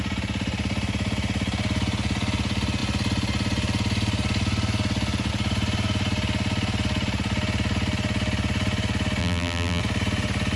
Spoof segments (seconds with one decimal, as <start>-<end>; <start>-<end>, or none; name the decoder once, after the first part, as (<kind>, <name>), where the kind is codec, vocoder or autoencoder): 9.2-9.8 (vocoder, BigVGAN v2)